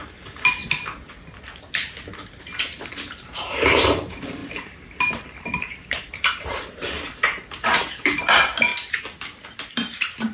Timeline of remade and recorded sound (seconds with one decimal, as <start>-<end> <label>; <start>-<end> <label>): 0.0-0.6 remade; 0.6-2.4 recorded; 2.4-8.7 remade; 8.7-9.7 recorded; 9.7-10.3 remade